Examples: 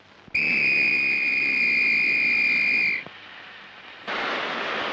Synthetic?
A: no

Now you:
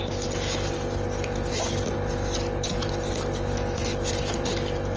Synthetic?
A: no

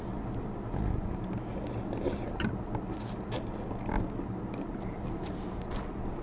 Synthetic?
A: no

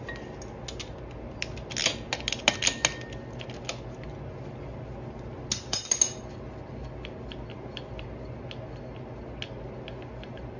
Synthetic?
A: no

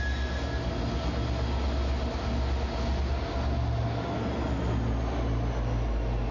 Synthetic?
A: no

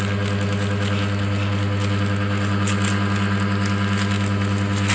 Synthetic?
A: no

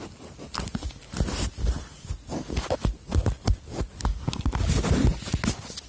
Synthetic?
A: no